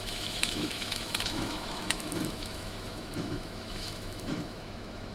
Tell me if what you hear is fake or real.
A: fake